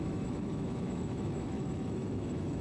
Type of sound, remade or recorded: remade